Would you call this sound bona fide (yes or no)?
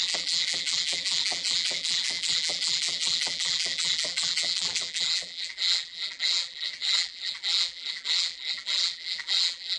no